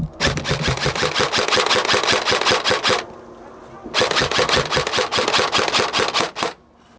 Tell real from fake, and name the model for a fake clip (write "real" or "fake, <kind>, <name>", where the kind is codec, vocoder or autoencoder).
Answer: real